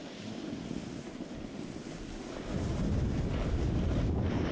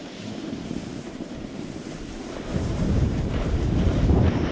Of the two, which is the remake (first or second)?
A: second